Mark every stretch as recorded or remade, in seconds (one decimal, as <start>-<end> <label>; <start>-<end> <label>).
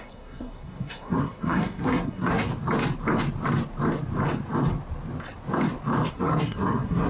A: 0.0-2.5 remade; 2.5-6.1 recorded; 6.1-7.1 remade